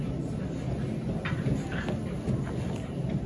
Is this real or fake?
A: real